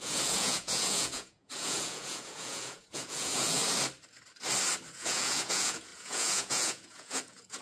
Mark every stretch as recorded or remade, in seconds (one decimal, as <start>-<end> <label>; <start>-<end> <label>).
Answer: 0.0-3.6 remade; 3.6-4.9 recorded; 4.9-7.6 remade